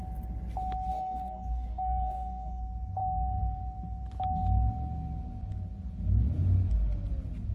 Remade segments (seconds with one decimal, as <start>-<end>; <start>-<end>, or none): 0.9-2.6